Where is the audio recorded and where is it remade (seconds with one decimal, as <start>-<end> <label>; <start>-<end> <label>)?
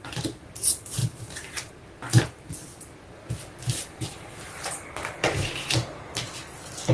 0.0-6.9 recorded